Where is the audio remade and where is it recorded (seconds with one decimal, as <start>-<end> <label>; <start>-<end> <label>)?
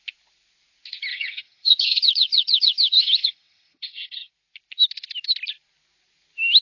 0.0-1.1 recorded; 1.1-4.3 remade; 4.3-6.6 recorded